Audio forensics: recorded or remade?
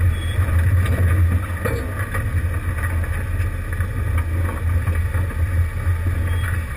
recorded